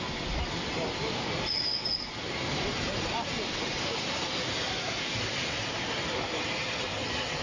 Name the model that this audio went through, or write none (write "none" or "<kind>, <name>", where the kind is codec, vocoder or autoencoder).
none